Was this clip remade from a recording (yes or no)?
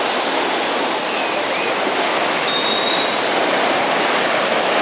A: no